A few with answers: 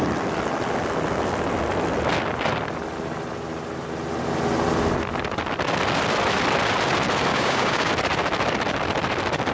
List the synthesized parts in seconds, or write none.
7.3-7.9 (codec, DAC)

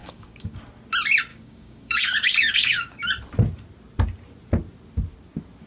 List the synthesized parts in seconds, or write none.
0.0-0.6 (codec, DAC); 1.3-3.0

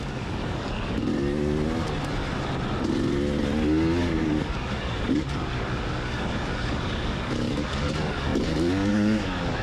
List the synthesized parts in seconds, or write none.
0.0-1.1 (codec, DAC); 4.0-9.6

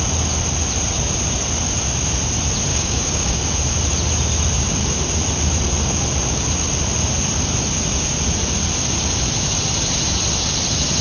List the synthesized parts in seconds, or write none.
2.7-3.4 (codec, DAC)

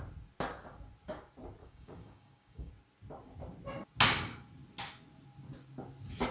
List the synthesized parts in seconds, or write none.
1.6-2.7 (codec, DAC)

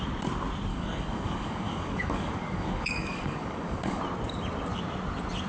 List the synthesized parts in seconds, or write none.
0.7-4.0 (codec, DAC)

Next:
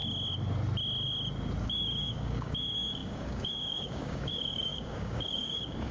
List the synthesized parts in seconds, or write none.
1.6-5.9 (codec, DAC)

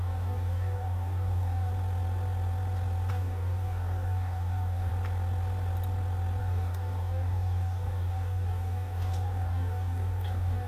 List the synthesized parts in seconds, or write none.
0.0-1.7 (codec, DAC); 3.1-4.9; 6.4-10.7